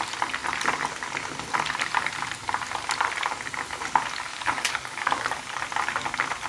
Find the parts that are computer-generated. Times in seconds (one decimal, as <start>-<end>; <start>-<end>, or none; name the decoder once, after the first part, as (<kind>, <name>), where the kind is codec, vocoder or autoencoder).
4.3-5.6 (codec, DAC)